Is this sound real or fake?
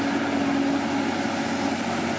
real